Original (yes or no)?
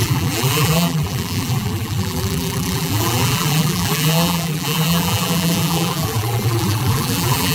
no